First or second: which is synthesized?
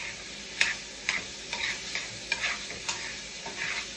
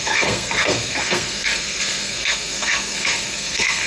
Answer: second